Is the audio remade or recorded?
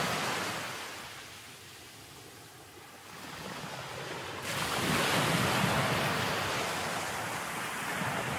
recorded